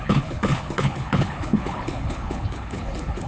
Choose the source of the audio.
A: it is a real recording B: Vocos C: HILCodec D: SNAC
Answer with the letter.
C